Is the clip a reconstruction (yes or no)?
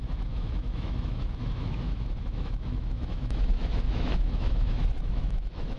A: yes